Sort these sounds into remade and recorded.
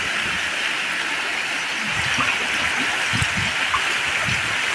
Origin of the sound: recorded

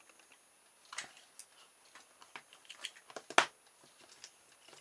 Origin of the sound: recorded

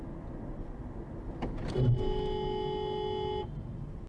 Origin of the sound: recorded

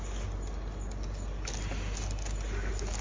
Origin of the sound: recorded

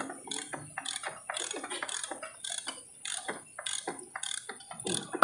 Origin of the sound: recorded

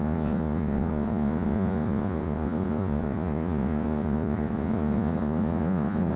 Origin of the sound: remade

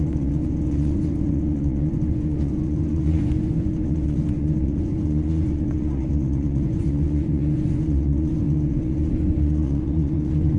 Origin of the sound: remade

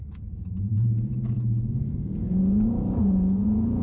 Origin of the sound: remade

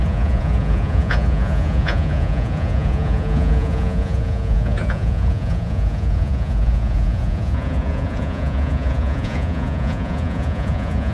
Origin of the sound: remade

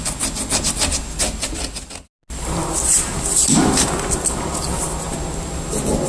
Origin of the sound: recorded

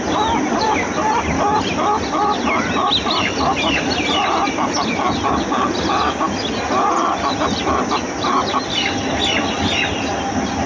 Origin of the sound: recorded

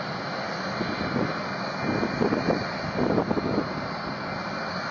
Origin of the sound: recorded